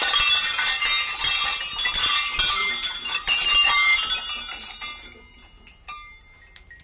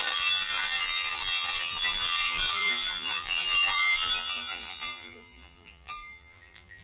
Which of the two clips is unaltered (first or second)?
first